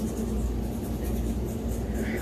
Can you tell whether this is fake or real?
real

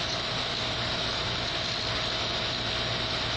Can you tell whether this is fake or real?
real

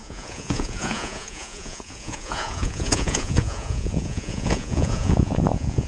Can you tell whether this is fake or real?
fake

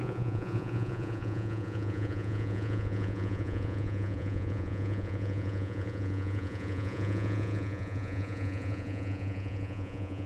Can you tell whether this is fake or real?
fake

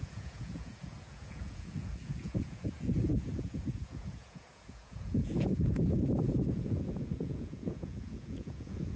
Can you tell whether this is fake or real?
fake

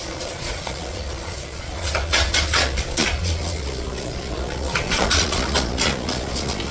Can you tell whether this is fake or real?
fake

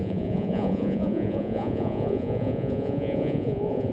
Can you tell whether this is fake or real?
fake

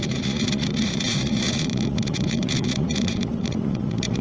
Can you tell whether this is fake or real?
fake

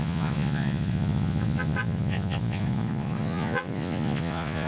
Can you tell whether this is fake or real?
fake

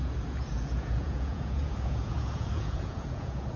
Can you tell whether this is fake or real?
fake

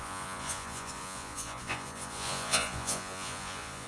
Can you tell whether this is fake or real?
fake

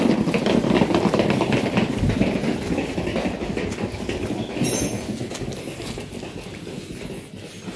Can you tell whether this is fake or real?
real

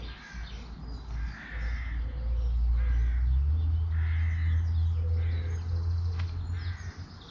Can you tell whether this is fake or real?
real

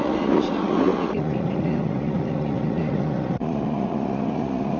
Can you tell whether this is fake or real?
fake